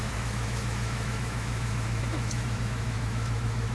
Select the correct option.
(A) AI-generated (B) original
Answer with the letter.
A